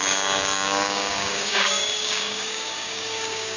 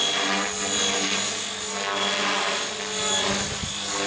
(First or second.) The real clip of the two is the second